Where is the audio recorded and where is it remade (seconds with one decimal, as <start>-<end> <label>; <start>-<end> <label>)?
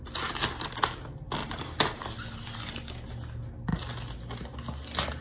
0.0-5.2 recorded